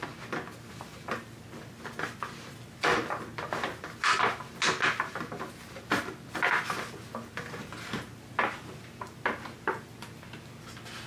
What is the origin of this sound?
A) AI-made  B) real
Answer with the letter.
B